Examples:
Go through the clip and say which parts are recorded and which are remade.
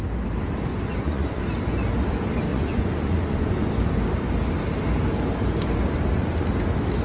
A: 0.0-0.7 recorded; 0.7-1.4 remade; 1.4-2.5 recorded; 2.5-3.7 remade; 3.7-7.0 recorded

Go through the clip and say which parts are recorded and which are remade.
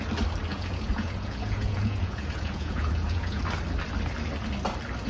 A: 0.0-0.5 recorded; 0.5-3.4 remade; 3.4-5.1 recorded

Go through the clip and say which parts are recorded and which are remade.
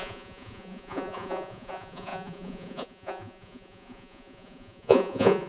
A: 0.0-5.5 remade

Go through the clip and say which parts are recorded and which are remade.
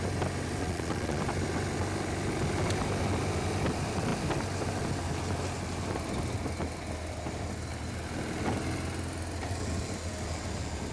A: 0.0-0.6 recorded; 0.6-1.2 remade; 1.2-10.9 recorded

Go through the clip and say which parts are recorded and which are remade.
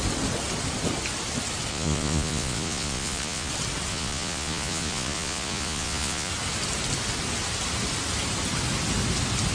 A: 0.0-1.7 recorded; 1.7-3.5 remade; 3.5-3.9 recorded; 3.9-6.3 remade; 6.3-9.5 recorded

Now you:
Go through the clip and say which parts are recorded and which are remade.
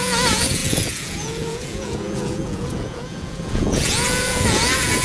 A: 0.0-5.0 remade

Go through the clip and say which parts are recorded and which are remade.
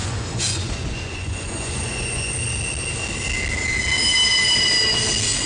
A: 0.0-2.3 remade; 2.3-5.5 recorded